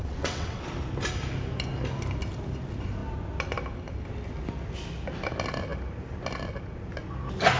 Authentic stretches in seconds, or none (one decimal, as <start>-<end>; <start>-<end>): 0.6-7.6